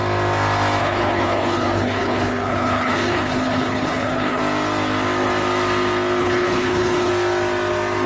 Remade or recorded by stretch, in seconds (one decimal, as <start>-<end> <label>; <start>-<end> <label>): 0.0-0.8 recorded; 0.8-4.4 remade; 4.4-6.2 recorded; 6.2-7.1 remade; 7.1-8.1 recorded